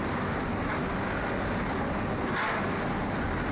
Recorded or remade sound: recorded